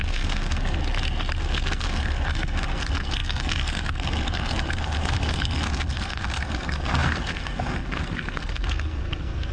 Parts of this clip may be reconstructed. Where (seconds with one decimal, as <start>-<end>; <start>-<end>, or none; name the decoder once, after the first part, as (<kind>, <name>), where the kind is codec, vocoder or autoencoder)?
0.0-0.8 (codec, SNAC); 1.4-9.5